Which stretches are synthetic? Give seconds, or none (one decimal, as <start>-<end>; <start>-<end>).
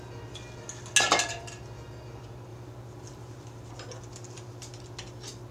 2.5-3.7